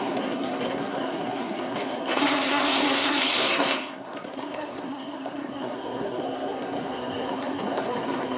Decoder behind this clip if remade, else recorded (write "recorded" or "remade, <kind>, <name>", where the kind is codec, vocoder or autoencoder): remade, codec, SNAC